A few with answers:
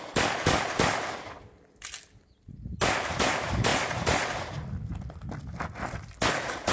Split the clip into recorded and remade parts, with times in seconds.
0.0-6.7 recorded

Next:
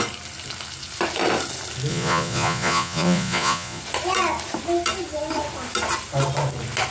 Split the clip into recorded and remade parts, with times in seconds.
0.0-1.9 recorded; 1.9-3.8 remade; 3.8-6.9 recorded

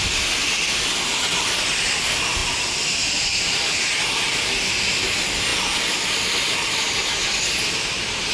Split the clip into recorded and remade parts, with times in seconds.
0.0-8.3 recorded

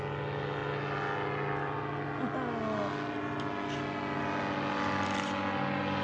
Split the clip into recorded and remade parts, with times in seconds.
0.0-6.0 recorded

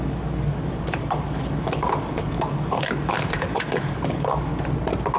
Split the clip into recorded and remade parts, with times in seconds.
0.0-4.5 remade; 4.5-5.2 recorded